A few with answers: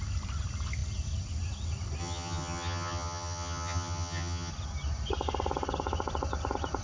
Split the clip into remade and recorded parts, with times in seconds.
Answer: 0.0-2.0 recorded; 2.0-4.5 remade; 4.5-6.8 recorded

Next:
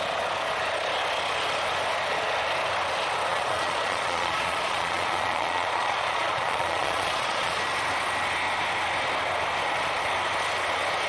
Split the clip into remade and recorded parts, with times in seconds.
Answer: 0.0-3.3 recorded; 3.3-7.6 remade; 7.6-11.1 recorded

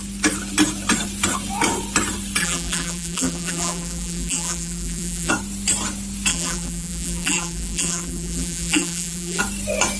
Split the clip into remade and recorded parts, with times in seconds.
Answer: 0.0-2.4 recorded; 2.4-5.3 remade; 5.3-6.3 recorded; 6.3-9.4 remade; 9.4-10.0 recorded